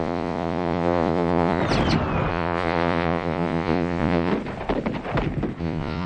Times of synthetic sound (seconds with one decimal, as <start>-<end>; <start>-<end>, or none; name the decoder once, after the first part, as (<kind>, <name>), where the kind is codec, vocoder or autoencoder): 0.0-1.6 (vocoder, Vocos); 2.3-4.3; 5.6-6.1